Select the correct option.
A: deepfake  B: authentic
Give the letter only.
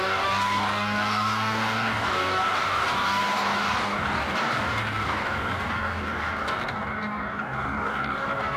A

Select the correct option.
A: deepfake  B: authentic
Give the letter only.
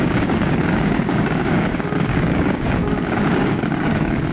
A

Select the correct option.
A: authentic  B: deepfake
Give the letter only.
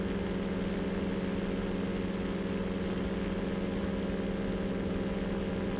A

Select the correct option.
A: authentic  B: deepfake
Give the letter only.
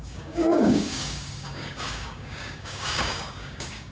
B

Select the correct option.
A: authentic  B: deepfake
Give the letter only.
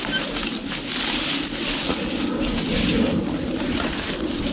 A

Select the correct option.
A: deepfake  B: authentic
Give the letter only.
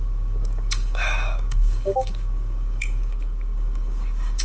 A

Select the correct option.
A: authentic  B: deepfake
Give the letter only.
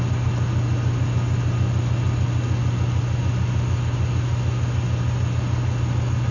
A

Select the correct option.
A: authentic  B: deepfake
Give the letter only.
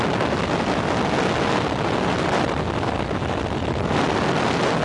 A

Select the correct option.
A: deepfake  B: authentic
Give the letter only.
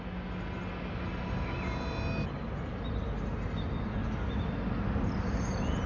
B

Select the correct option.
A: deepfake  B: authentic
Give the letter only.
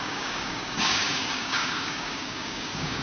A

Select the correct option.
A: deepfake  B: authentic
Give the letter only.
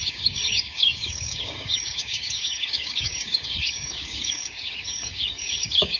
A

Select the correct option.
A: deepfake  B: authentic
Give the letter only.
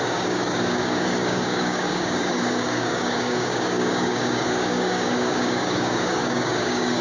A